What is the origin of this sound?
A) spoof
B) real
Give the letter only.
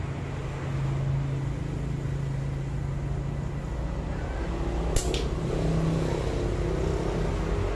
B